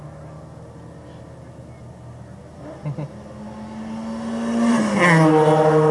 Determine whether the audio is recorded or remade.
recorded